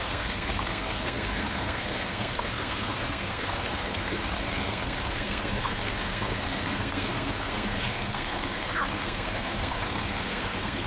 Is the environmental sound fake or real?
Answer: fake